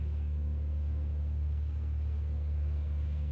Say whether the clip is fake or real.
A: fake